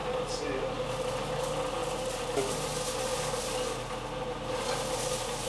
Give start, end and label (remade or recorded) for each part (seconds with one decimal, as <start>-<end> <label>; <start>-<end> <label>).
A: 0.0-0.6 remade; 0.6-5.5 recorded